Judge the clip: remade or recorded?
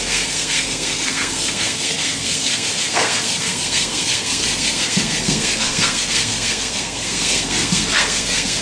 remade